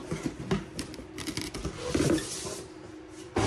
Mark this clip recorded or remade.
recorded